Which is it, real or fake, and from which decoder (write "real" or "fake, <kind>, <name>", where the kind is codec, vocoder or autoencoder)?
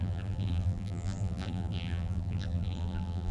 fake, vocoder, BigVGAN v2